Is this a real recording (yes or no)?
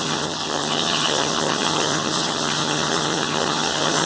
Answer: no